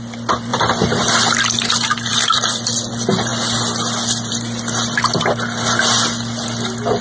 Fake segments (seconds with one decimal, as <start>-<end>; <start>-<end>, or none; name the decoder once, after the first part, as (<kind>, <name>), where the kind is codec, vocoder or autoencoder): 2.1-2.9 (vocoder, BigVGAN v2)